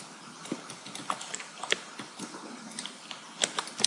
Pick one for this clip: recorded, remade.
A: recorded